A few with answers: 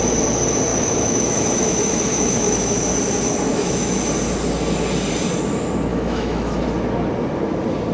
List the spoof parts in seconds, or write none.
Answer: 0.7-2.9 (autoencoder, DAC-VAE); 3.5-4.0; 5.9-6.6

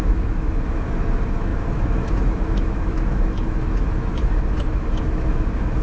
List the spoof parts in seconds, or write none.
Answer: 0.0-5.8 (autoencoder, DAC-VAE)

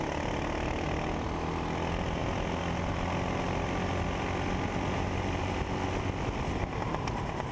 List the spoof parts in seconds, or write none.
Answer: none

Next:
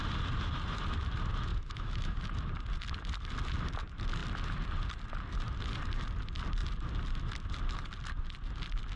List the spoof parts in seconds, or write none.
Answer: 1.5-2.2 (autoencoder, DAC-VAE)

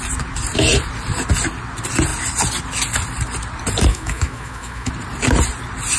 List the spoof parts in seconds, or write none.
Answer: 3.9-4.9 (autoencoder, DAC-VAE)

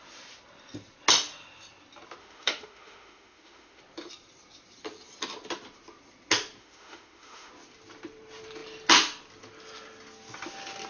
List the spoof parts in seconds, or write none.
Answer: 2.2-3.8 (autoencoder, DAC-VAE); 6.6-7.5